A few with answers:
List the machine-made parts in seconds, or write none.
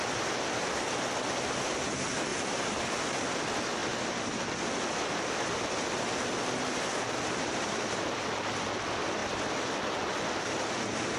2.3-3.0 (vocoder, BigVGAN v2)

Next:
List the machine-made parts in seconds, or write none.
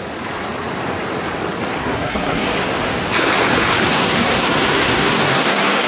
1.8-2.5 (codec, SNAC); 3.9-5.9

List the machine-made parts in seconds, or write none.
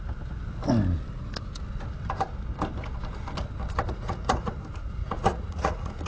3.9-4.5 (vocoder, Vocos); 5.0-6.1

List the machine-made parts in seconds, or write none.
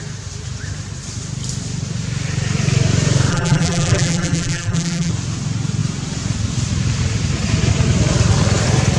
3.3-5.1 (vocoder, BigVGAN v2)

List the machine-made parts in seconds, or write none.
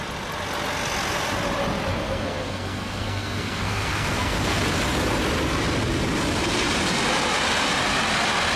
1.9-4.6 (codec, SNAC)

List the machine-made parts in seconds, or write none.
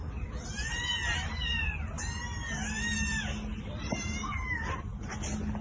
none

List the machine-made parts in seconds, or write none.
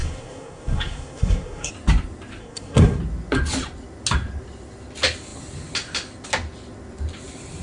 0.0-1.7 (codec, SNAC); 2.4-3.0